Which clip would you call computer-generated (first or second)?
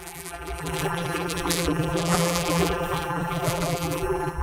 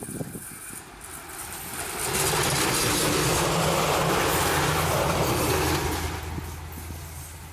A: first